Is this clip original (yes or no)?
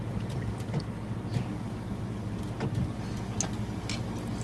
yes